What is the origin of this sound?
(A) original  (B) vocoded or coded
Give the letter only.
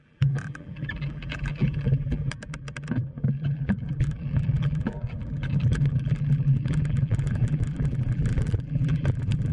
B